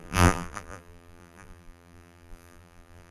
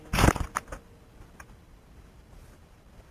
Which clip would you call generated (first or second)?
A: first